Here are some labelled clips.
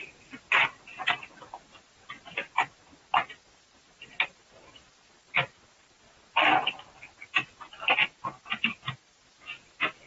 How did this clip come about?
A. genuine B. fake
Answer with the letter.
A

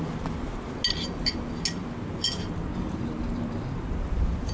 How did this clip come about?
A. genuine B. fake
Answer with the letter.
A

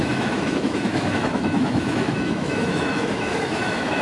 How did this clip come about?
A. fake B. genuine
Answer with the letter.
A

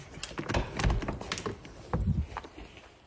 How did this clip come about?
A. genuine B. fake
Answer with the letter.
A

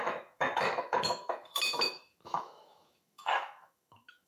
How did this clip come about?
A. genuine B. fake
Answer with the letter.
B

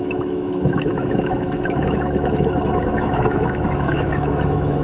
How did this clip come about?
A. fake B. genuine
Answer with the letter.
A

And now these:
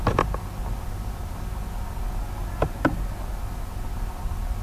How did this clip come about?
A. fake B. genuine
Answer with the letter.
B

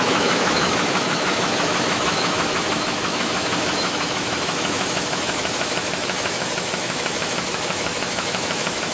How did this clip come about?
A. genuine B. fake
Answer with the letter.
B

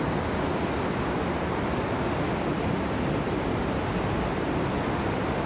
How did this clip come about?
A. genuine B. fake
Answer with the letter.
A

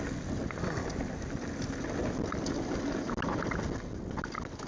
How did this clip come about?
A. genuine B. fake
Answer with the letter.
A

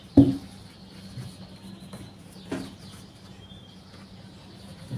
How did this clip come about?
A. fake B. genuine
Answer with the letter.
B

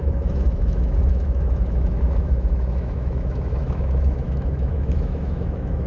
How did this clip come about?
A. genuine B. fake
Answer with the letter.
B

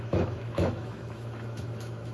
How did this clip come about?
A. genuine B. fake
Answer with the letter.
B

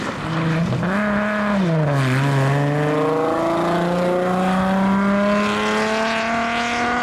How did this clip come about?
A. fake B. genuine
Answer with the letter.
B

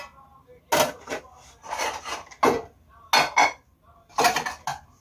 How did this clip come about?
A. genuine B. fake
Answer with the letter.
A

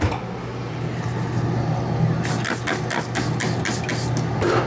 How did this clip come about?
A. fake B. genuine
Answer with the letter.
B